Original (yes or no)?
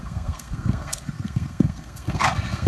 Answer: no